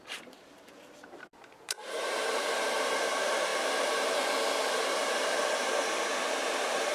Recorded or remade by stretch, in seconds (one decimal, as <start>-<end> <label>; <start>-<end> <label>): 0.0-3.5 remade; 3.5-4.9 recorded; 4.9-6.9 remade